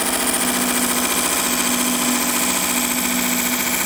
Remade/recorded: recorded